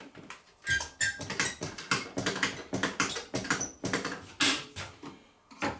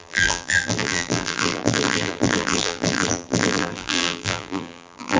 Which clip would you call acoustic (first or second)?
first